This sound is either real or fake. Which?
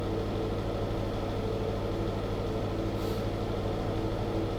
real